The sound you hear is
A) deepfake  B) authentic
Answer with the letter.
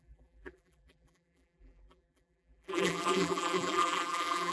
A